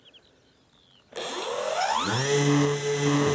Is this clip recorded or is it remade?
recorded